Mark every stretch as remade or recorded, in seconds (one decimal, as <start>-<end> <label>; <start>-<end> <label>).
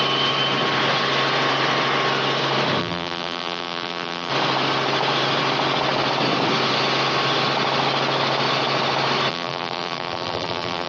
0.0-2.8 recorded; 2.8-4.3 remade; 4.3-9.3 recorded; 9.3-10.9 remade